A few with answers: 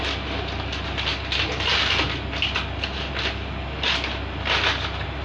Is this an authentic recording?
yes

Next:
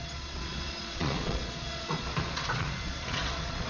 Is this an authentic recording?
no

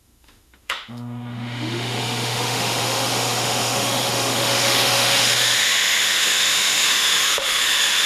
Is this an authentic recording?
no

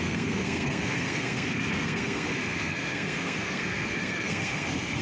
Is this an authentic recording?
no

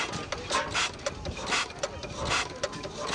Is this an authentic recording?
yes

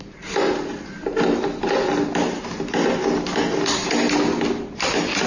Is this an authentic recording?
yes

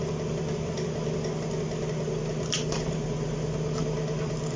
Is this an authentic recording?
yes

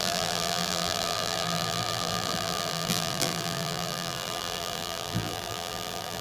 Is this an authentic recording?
no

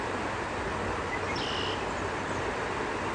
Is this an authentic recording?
yes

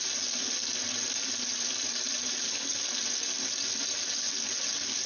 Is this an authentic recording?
yes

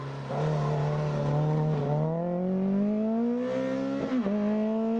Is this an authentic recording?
yes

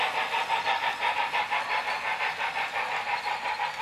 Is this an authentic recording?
yes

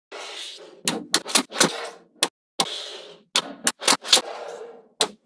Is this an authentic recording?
yes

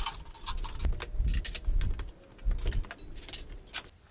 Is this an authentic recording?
yes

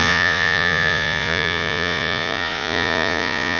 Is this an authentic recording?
no